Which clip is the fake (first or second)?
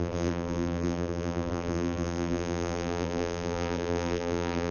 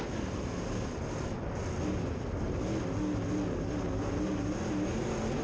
first